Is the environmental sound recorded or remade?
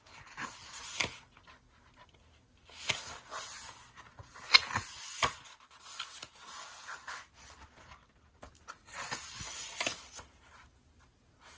recorded